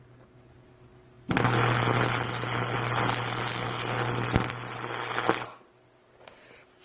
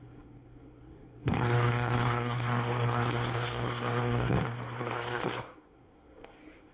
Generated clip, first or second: second